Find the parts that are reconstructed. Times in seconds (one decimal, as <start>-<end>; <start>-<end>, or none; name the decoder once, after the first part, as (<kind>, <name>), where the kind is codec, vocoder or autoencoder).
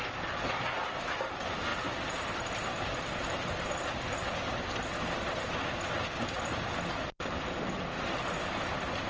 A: none